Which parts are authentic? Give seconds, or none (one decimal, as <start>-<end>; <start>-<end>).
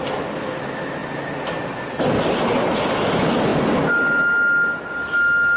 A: 0.0-5.6